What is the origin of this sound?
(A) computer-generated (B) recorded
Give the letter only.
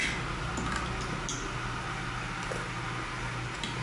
B